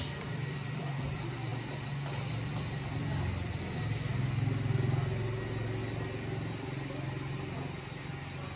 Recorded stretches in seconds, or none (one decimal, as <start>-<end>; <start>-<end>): 4.1-8.6